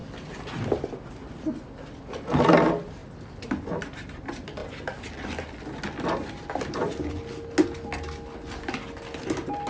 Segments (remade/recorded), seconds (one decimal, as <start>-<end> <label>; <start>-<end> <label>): 0.0-9.7 recorded